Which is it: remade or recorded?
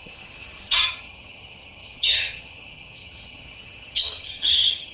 remade